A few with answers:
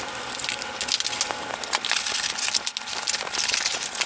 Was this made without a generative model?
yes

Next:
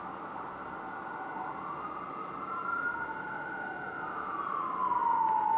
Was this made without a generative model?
yes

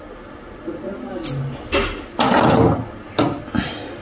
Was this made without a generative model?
yes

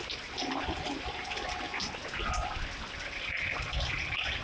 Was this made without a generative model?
yes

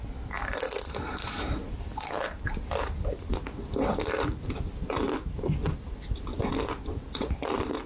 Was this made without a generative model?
yes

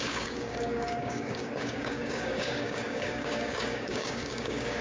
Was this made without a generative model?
no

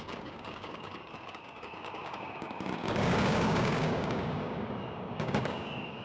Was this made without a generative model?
no